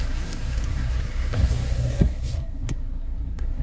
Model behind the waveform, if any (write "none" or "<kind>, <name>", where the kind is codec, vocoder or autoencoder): codec, SNAC